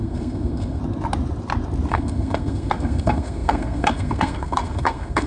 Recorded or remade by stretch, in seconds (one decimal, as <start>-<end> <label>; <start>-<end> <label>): 0.0-0.8 remade; 0.8-1.9 recorded; 1.9-5.3 remade